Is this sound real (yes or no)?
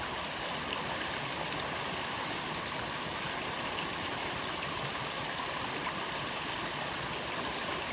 yes